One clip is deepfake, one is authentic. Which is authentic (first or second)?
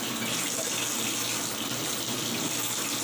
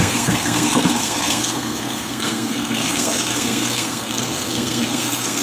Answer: first